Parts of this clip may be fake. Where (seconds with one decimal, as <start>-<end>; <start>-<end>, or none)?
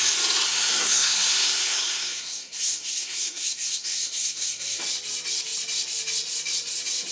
0.5-4.8